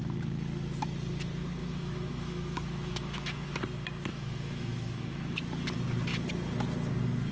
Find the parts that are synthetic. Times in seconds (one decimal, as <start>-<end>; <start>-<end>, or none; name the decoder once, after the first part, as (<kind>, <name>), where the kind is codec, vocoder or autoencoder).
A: 1.6-3.6 (autoencoder, DAC-VAE); 4.1-5.2